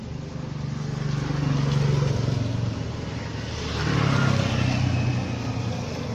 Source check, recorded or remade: recorded